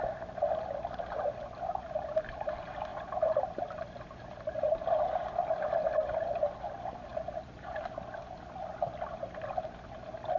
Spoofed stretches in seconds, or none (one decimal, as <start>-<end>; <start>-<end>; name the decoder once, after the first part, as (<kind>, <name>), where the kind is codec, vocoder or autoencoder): 7.1-7.7 (vocoder, BigVGAN v2)

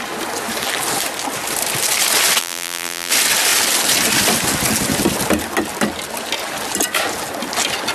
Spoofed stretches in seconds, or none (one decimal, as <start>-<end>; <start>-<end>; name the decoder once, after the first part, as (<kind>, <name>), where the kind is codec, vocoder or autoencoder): 2.4-3.1 (vocoder, BigVGAN v2)